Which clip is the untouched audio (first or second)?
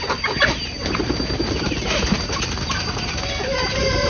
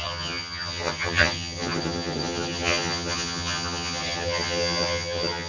first